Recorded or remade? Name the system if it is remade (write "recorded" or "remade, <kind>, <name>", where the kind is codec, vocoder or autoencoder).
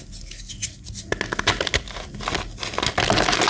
recorded